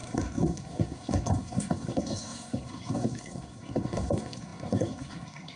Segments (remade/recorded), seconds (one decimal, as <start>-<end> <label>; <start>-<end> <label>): 0.0-5.6 remade